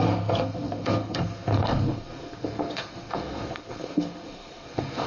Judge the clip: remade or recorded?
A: remade